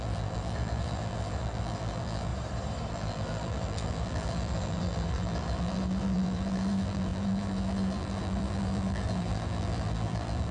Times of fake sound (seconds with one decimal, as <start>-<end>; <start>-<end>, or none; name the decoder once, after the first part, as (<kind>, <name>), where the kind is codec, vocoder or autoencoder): 0.0-2.3 (vocoder, BigVGAN v2); 2.9-10.5